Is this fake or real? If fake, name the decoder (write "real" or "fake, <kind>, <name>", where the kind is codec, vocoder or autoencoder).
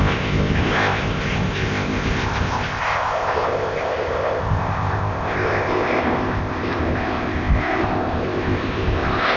fake, codec, ZipCodec